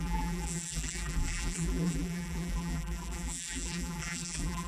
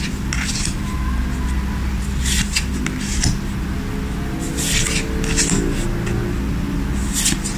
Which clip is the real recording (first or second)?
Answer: second